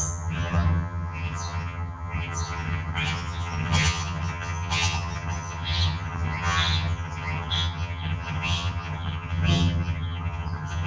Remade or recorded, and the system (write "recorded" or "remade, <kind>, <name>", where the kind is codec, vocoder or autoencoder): remade, vocoder, HiFi-GAN